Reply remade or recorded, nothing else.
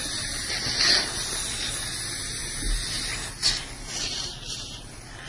recorded